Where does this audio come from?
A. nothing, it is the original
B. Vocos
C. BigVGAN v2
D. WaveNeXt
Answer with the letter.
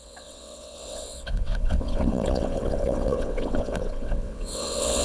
D